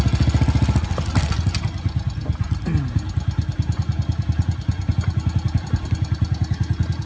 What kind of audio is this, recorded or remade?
recorded